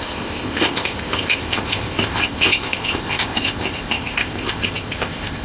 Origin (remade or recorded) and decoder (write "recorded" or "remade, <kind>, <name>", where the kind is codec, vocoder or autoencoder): remade, codec, ZipCodec